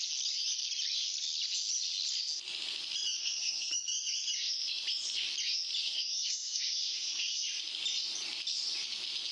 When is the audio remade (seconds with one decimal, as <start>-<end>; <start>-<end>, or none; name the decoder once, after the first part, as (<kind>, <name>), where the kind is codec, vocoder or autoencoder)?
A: 3.2-3.7 (codec, SNAC); 5.8-7.4

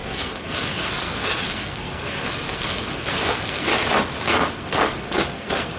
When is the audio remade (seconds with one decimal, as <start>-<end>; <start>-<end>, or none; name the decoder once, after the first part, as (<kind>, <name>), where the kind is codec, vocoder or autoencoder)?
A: 0.0-3.7 (codec, SNAC); 4.2-5.8

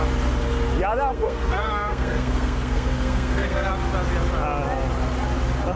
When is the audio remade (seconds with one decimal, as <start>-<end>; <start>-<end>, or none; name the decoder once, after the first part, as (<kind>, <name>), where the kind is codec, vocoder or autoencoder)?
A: 1.1-3.7 (codec, SNAC)